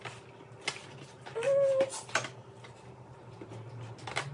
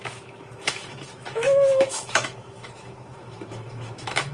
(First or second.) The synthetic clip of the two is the second